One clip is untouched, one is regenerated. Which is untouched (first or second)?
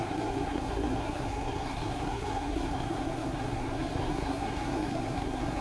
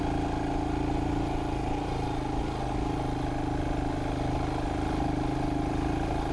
second